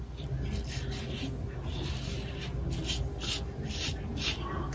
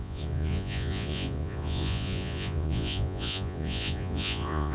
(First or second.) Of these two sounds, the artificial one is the second